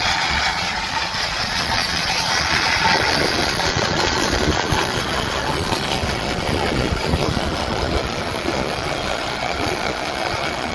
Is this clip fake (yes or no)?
yes